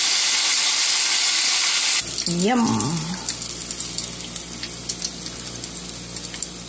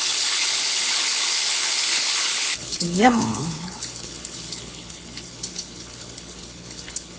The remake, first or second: second